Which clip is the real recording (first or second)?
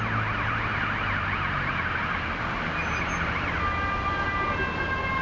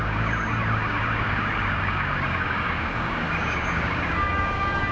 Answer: first